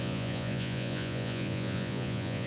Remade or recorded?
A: remade